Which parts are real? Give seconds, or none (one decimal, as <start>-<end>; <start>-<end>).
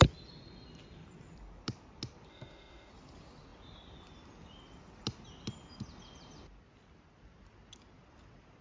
0.0-2.3; 2.9-8.6